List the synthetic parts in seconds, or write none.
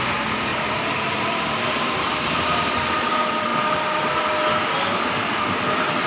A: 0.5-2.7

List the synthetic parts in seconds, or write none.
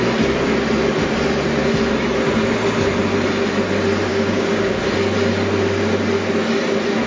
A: 4.1-4.8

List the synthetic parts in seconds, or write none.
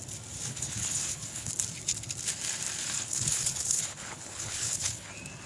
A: 0.5-1.5; 2.8-5.1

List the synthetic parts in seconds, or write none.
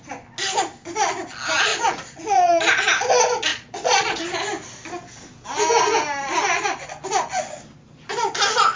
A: 1.7-2.6; 3.5-4.2